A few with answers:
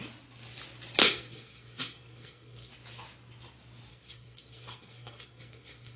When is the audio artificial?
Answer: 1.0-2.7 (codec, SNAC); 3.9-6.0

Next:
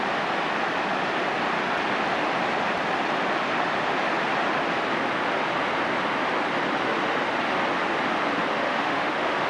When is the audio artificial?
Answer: 8.6-9.5 (autoencoder, DAC-VAE)